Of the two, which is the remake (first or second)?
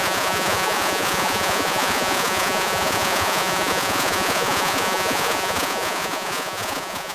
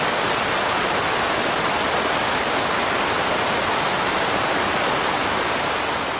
first